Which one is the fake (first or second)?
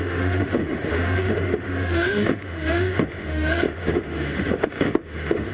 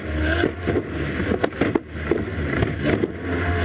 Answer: first